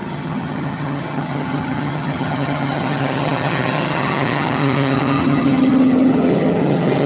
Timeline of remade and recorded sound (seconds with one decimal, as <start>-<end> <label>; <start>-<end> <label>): 0.0-7.1 remade